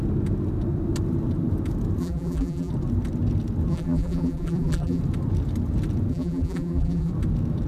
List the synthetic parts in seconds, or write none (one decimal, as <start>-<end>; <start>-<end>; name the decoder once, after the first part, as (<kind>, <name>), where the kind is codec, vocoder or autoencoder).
2.0-2.7 (vocoder, BigVGAN v2); 3.7-5.0; 6.1-7.1